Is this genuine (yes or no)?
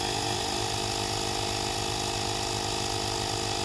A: yes